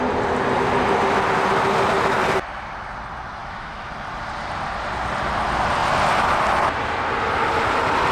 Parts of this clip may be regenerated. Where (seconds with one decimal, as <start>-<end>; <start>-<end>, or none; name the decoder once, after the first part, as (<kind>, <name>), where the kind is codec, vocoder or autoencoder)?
3.4-3.9 (autoencoder, DAC-VAE)